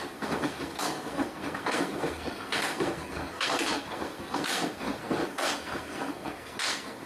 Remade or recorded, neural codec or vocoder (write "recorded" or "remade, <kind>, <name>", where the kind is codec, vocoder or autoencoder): remade, codec, SNAC